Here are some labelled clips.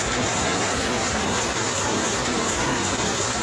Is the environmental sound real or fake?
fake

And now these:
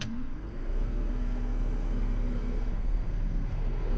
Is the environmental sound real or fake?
fake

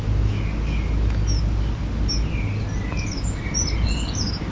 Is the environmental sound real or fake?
real